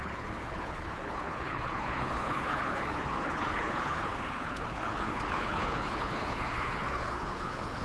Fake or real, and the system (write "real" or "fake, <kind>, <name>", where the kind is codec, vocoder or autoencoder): fake, codec, HILCodec